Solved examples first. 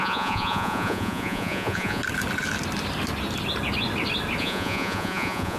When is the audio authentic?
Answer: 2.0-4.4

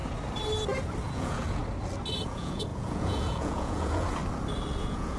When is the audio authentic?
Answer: 0.0-1.1; 1.6-2.2; 4.2-4.8

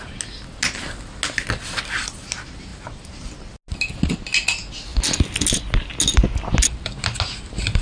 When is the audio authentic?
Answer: 0.0-7.8

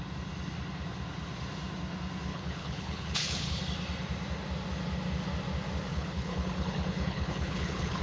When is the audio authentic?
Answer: 0.0-2.3; 3.6-5.9

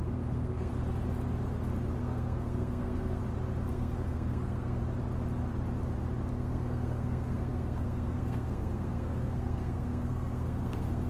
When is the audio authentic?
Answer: 0.7-2.0; 3.2-3.7; 4.8-6.3

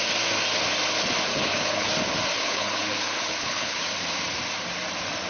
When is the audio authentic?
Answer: 0.0-1.3; 1.9-2.3; 3.8-5.3